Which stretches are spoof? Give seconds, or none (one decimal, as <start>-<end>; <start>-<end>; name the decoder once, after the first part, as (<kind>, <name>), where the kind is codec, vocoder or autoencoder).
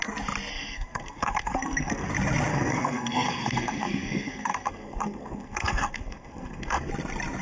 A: 0.5-2.1 (codec, SNAC); 2.5-6.9